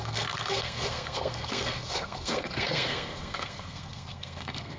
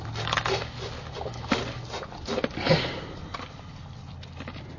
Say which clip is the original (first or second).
second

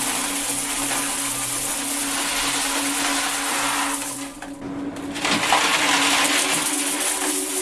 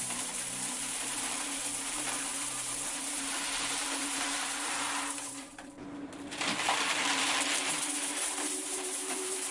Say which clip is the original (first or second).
first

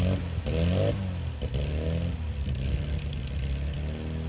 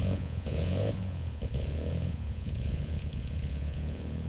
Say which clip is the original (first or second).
first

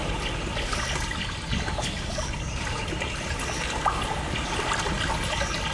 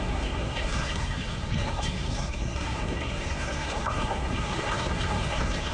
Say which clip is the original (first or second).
first